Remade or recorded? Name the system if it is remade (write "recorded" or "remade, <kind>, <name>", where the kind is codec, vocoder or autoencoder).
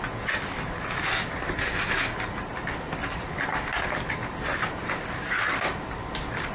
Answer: recorded